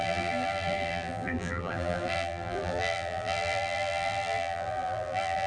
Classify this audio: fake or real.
fake